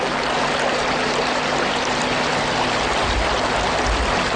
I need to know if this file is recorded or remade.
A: recorded